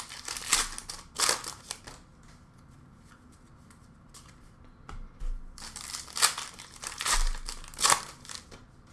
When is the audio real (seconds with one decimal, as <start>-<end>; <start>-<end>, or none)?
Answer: 0.0-8.9